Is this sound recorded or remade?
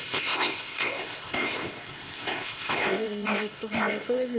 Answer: remade